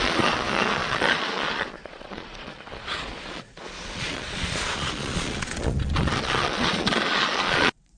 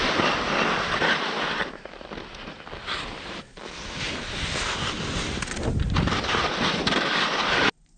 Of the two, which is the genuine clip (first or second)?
second